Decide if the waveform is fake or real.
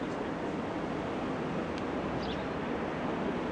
real